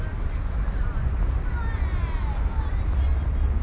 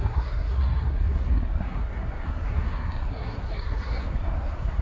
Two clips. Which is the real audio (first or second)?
first